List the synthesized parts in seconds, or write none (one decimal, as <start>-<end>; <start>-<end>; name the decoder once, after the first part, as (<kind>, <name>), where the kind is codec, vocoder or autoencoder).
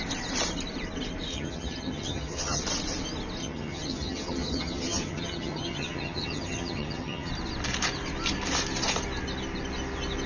1.3-2.6 (vocoder, HiFi-GAN); 3.4-7.3